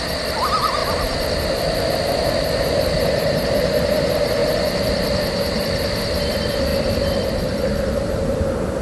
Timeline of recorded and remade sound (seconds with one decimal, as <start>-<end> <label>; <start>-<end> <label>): 0.0-8.8 recorded